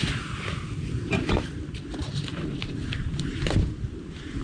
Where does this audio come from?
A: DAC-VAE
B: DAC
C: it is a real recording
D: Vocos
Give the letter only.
C